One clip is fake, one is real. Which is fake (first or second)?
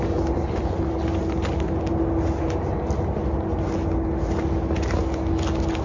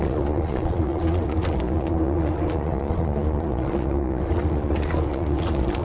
second